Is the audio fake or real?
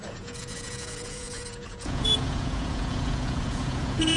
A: fake